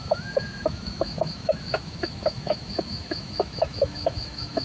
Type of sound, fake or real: fake